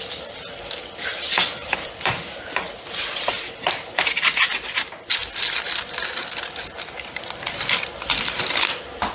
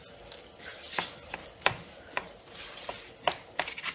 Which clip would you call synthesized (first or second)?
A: first